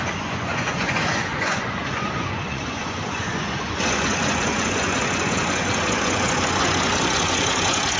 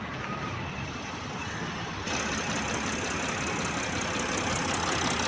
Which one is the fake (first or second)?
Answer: first